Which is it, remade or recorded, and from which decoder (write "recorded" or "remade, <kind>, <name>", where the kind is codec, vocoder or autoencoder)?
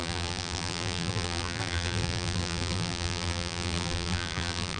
remade, vocoder, BigVGAN v2